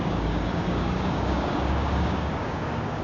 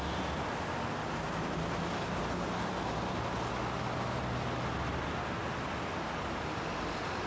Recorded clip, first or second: second